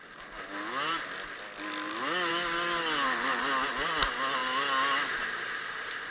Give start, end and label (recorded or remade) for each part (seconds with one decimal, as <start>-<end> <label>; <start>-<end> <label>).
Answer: 0.0-6.1 recorded